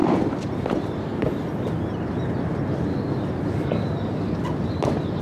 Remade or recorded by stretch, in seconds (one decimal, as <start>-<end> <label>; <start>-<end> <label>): 0.0-5.2 recorded